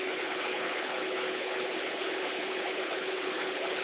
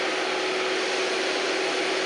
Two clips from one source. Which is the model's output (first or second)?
first